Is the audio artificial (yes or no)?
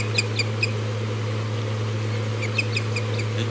no